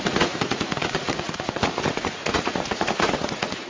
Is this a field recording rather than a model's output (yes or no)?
no